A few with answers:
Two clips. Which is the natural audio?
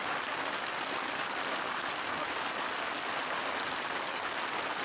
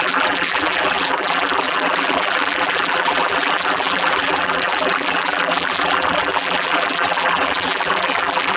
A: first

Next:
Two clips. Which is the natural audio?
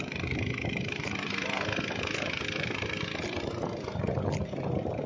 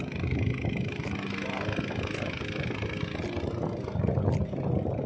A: second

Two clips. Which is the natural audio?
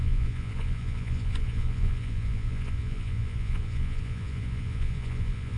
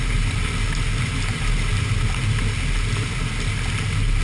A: second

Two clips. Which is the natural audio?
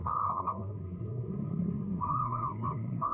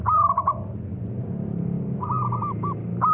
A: second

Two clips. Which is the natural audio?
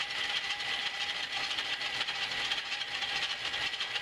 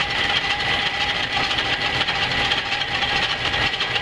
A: first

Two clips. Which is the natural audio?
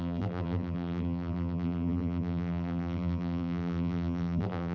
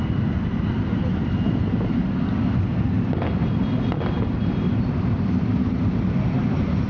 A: second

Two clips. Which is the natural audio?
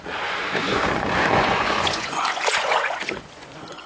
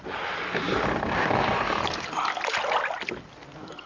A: second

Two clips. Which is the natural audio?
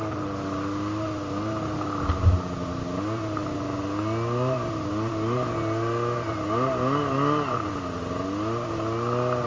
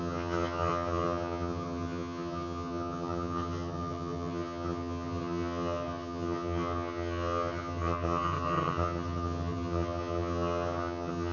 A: first